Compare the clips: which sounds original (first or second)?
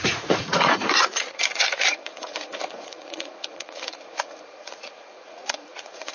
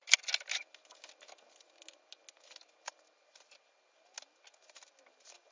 second